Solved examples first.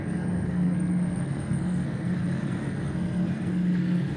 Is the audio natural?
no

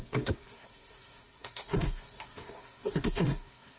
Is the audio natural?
no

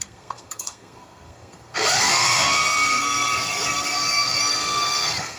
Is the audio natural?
no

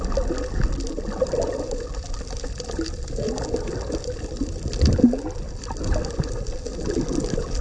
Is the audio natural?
yes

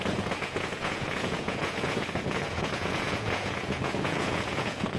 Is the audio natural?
no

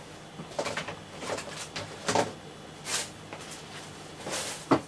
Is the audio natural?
yes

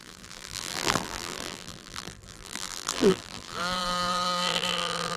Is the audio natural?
no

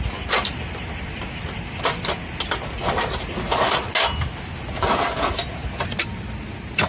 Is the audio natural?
yes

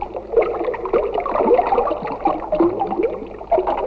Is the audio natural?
yes